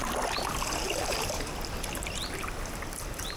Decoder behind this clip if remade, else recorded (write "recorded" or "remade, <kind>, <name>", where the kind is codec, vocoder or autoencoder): recorded